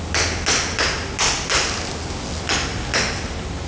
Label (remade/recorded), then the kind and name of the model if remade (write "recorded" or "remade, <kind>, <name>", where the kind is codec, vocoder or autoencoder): recorded